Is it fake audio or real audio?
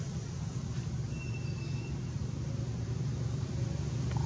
real